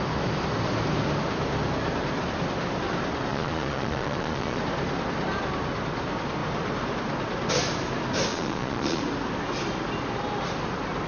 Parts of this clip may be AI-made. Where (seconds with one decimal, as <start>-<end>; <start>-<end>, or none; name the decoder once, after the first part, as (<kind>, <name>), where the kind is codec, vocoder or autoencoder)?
3.3-4.6 (vocoder, Vocos); 8.3-9.0